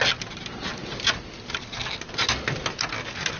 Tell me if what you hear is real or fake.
real